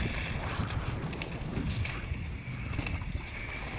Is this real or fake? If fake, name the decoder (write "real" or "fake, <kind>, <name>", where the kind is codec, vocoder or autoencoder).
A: fake, vocoder, BigVGAN v2